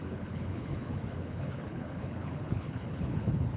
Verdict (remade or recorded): remade